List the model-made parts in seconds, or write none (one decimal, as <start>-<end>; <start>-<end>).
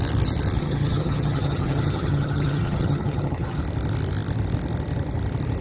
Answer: 0.6-3.6